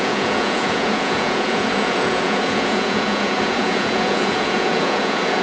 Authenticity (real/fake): fake